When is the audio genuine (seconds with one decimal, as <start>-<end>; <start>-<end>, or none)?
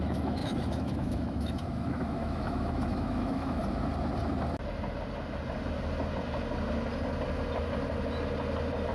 3.6-8.9